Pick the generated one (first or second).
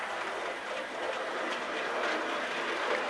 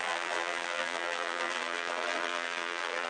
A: second